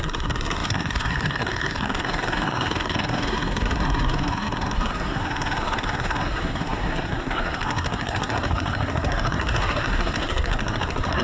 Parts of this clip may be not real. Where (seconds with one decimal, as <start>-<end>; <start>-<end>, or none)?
0.0-11.2